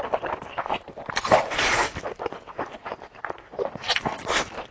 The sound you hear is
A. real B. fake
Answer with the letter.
A